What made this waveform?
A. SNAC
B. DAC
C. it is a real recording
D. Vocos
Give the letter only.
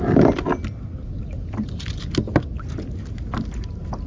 C